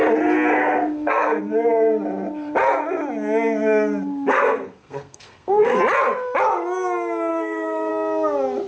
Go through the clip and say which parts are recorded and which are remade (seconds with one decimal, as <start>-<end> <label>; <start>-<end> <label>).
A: 0.0-0.6 recorded; 0.6-1.4 remade; 1.4-4.3 recorded; 4.3-5.8 remade; 5.8-7.3 recorded; 7.3-7.9 remade; 7.9-8.7 recorded